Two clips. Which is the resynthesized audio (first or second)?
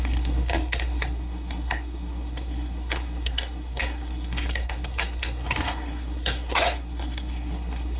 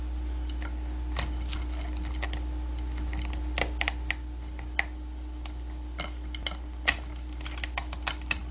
first